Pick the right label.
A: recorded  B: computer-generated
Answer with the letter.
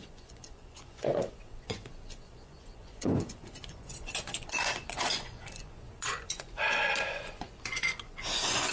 B